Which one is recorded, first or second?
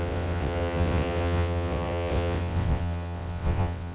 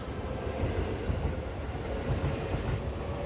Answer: second